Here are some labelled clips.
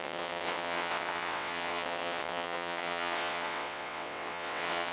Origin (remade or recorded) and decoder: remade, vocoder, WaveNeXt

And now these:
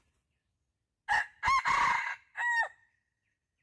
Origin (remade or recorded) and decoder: recorded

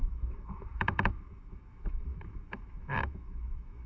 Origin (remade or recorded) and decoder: remade, autoencoder, DAC-VAE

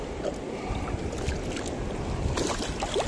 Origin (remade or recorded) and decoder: recorded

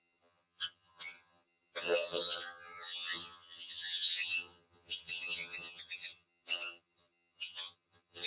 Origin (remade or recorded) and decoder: remade, vocoder, HiFi-GAN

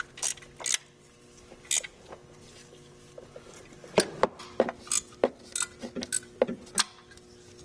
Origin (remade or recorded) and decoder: recorded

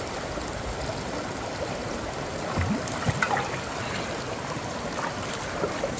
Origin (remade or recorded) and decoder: recorded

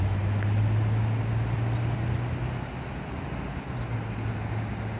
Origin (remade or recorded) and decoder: recorded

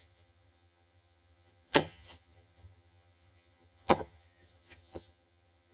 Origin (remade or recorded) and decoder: remade, vocoder, HiFi-GAN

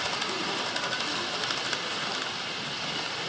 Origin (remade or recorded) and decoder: recorded